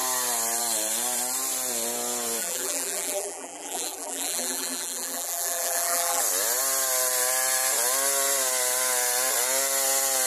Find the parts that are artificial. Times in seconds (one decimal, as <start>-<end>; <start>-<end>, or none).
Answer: 2.4-6.2